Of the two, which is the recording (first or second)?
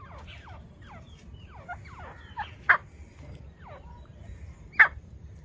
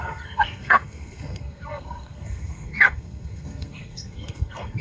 first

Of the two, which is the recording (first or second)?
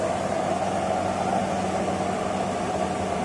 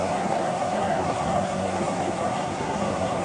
first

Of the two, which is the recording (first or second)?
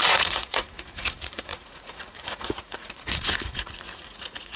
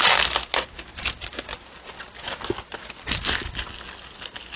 second